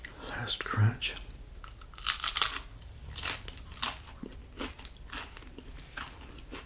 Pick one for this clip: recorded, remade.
recorded